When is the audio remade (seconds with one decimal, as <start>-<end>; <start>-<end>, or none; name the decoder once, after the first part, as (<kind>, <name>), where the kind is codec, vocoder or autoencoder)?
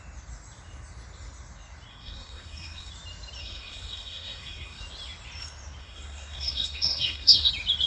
1.9-2.9 (codec, SNAC); 3.4-4.8; 5.8-7.5